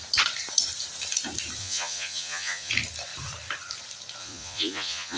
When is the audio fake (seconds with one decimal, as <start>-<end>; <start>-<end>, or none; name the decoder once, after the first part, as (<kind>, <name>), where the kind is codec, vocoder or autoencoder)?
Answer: 1.6-2.7 (vocoder, Vocos); 4.2-5.2